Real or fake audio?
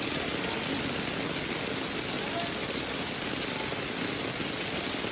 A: real